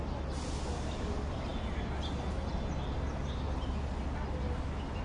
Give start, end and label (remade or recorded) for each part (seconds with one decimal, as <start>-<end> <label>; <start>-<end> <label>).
0.0-5.0 recorded

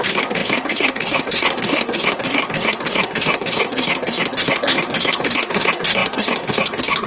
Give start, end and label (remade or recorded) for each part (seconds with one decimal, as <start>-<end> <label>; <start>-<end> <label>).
0.0-7.1 remade

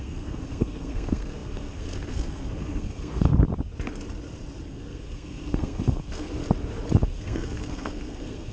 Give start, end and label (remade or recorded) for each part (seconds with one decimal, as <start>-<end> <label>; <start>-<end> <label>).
0.0-3.3 remade; 3.3-4.7 recorded; 4.7-6.4 remade; 6.4-7.0 recorded; 7.0-8.5 remade

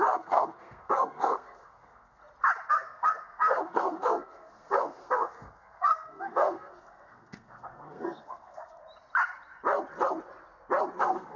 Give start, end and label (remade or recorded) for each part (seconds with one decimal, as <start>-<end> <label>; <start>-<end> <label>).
0.0-2.2 remade; 2.2-2.7 recorded; 2.7-8.8 remade; 8.8-11.0 recorded; 11.0-11.4 remade

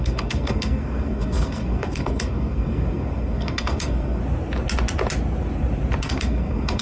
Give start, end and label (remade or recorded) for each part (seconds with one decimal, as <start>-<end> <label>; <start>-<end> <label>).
0.0-4.2 remade; 4.2-6.0 recorded; 6.0-6.8 remade

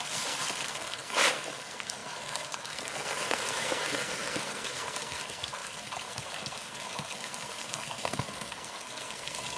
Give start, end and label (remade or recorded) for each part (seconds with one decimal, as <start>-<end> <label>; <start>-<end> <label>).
0.0-9.6 remade

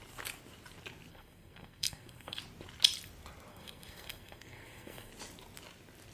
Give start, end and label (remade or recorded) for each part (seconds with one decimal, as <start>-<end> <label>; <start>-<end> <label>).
0.0-1.1 recorded; 1.1-2.4 remade; 2.4-3.5 recorded; 3.5-5.1 remade; 5.1-6.1 recorded